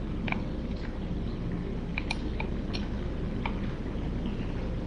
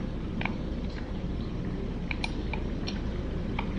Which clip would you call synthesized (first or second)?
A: second